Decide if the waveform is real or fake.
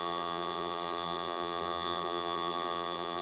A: fake